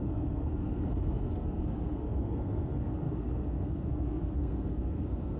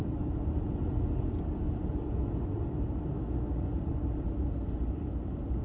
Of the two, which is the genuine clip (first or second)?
second